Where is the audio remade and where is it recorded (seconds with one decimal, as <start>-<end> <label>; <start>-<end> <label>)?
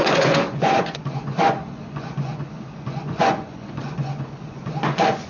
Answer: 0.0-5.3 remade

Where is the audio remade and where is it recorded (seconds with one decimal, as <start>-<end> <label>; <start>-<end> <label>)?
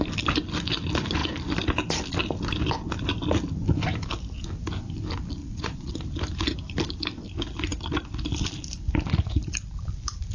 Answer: 0.0-5.4 recorded; 5.4-5.9 remade; 5.9-10.3 recorded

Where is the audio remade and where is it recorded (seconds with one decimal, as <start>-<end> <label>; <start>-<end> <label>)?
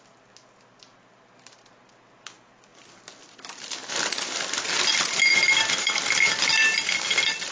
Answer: 0.0-7.5 recorded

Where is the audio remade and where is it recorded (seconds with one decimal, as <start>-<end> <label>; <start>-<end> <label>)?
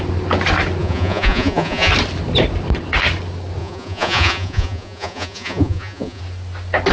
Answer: 0.0-0.8 recorded; 0.8-1.9 remade; 1.9-3.6 recorded; 3.6-6.2 remade; 6.2-6.9 recorded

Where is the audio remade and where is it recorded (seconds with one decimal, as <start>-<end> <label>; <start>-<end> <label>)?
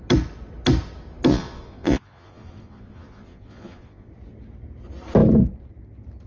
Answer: 0.0-1.3 recorded; 1.3-4.1 remade; 4.1-6.3 recorded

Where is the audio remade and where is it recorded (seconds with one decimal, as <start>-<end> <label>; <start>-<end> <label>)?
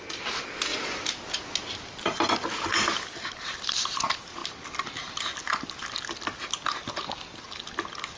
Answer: 0.0-8.2 recorded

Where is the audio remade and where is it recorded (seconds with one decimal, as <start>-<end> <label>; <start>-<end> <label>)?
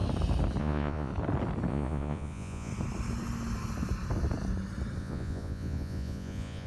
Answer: 0.0-0.6 recorded; 0.6-1.1 remade; 1.1-1.7 recorded; 1.7-2.7 remade; 2.7-5.0 recorded; 5.0-6.7 remade